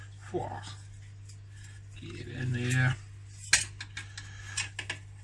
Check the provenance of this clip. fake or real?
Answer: real